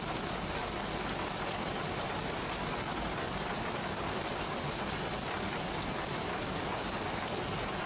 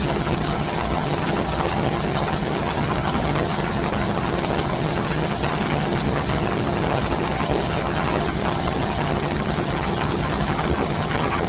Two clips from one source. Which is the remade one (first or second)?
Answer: second